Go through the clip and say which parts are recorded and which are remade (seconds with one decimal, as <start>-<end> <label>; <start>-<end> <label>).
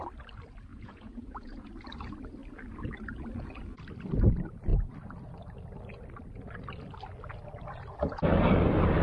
0.0-0.7 recorded; 0.7-1.7 remade; 1.7-9.0 recorded